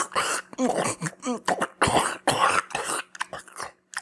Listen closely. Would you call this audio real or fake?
real